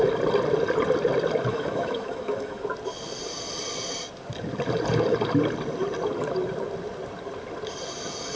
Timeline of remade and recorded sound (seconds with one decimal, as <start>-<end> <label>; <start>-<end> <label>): 0.0-1.5 recorded; 1.5-2.6 remade; 2.6-8.4 recorded